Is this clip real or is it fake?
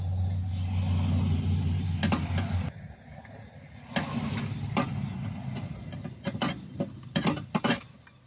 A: real